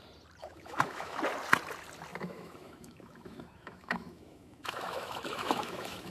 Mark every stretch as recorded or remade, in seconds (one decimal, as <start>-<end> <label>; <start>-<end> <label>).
0.0-0.4 recorded; 0.4-1.2 remade; 1.2-2.1 recorded; 2.1-6.1 remade

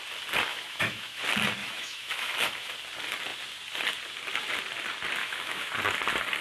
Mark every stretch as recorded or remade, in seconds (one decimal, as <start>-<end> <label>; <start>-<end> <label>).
0.0-0.5 recorded; 0.5-1.2 remade; 1.2-1.6 recorded; 1.6-2.7 remade; 2.7-5.2 recorded; 5.2-5.7 remade; 5.7-6.4 recorded

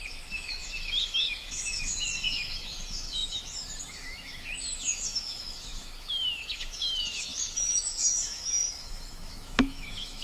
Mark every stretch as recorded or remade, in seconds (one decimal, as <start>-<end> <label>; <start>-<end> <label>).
0.0-10.2 remade

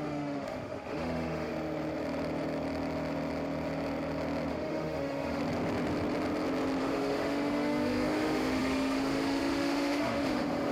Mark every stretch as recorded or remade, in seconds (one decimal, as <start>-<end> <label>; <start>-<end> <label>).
0.0-1.5 remade; 1.5-4.5 recorded; 4.5-5.4 remade; 5.4-6.8 recorded; 6.8-10.7 remade

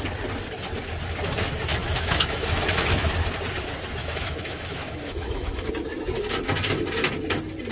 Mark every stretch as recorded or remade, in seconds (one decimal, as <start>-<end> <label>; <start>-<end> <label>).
0.0-1.7 recorded; 1.7-3.1 remade; 3.1-4.0 recorded; 4.0-5.7 remade; 5.7-7.7 recorded